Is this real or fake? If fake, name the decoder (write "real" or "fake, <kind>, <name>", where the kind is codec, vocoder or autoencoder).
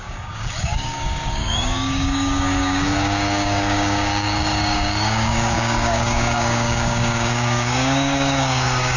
fake, codec, DAC